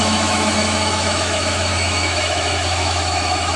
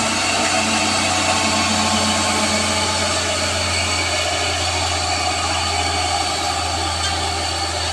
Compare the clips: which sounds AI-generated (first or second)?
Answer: first